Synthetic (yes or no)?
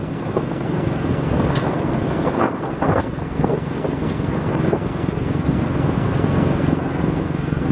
yes